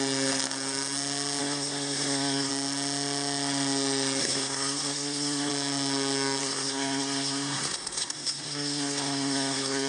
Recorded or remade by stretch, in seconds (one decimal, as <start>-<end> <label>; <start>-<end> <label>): 0.0-1.4 recorded; 1.4-2.5 remade; 2.5-4.2 recorded; 4.2-5.5 remade; 5.5-6.4 recorded; 6.4-9.9 remade